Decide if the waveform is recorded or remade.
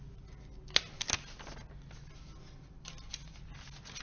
recorded